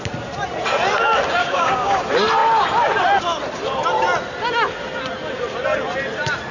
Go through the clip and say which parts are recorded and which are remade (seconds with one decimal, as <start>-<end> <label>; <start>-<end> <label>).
0.0-1.4 recorded; 1.4-2.0 remade; 2.0-6.5 recorded